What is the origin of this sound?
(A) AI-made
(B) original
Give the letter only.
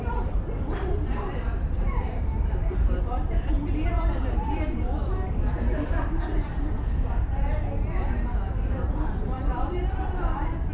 A